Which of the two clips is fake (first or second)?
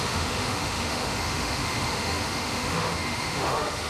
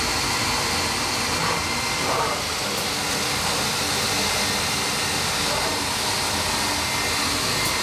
first